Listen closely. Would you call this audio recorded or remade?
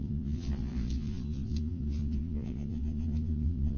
remade